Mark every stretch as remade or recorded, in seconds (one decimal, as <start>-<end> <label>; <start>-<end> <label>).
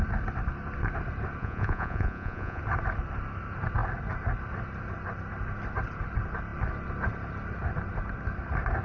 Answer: 0.0-1.4 recorded; 1.4-2.6 remade; 2.6-8.8 recorded